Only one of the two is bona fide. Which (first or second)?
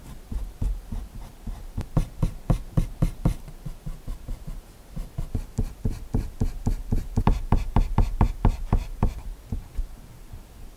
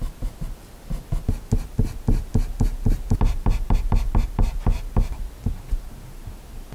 second